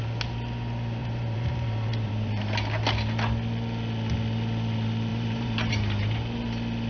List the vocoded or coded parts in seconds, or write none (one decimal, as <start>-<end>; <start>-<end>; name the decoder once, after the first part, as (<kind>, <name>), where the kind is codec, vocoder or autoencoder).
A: 1.0-2.4 (vocoder, BigVGAN v2); 5.1-5.7